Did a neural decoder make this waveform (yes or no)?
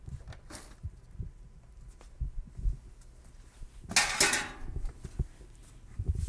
no